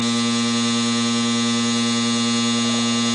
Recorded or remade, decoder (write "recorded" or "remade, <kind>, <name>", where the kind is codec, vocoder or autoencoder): recorded